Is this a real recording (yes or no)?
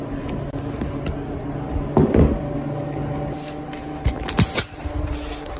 yes